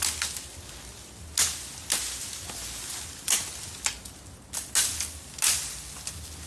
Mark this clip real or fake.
real